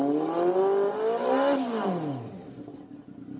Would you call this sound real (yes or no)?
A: yes